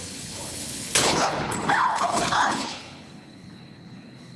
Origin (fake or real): fake